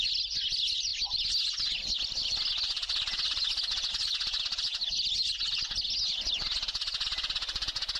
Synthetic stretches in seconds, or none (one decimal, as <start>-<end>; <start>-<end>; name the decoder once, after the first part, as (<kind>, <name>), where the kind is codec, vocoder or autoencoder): none